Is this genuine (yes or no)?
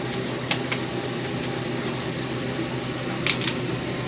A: yes